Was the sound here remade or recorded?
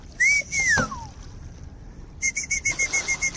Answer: recorded